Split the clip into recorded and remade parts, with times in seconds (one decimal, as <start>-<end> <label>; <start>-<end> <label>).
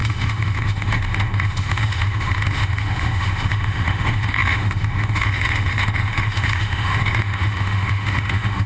0.0-8.7 remade